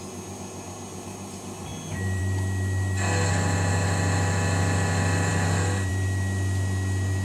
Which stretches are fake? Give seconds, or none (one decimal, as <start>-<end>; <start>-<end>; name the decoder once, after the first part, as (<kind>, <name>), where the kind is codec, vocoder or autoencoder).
none